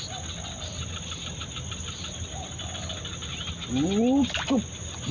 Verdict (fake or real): real